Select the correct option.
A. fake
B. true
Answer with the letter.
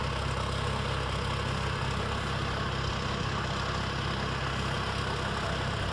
B